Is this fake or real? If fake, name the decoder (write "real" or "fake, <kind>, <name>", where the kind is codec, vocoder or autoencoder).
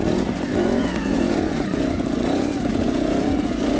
fake, vocoder, Vocos